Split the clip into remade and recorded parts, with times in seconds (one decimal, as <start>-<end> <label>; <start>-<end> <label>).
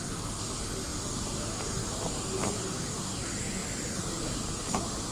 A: 0.0-0.9 recorded; 0.9-1.7 remade; 1.7-3.6 recorded; 3.6-4.5 remade; 4.5-5.1 recorded